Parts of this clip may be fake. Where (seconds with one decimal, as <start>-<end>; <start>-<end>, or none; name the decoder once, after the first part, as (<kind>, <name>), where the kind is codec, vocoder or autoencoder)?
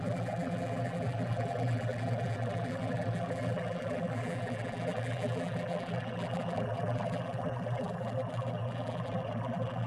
0.0-9.9 (vocoder, BigVGAN v2)